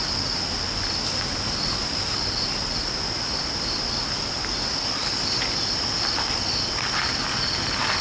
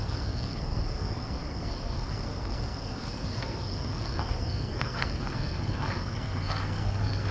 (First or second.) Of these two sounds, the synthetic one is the second